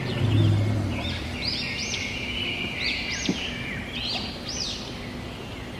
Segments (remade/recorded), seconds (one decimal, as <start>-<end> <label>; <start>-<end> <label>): 0.0-1.8 recorded; 1.8-5.3 remade; 5.3-5.8 recorded